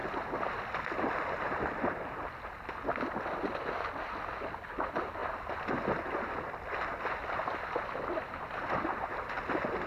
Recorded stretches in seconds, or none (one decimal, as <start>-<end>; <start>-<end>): 0.0-9.9